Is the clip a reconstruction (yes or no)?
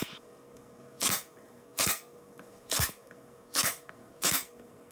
yes